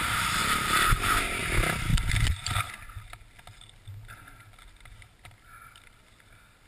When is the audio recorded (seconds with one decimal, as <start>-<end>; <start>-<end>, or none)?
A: 0.0-0.4; 1.4-1.9; 2.7-6.7